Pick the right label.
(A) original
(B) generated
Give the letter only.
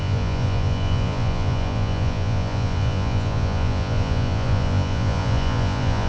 B